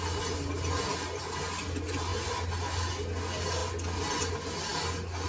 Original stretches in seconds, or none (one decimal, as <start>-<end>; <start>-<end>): 0.0-5.3